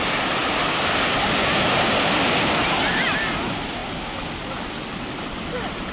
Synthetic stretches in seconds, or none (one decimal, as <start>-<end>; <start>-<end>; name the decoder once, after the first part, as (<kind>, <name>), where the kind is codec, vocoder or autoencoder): 0.4-1.8 (vocoder, BigVGAN v2)